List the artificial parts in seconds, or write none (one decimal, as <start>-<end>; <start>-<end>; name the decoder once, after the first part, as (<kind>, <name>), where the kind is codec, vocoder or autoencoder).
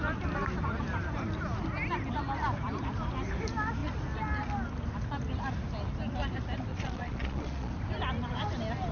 6.7-7.7 (vocoder, Vocos)